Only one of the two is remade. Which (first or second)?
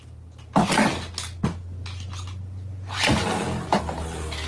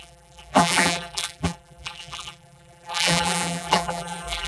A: second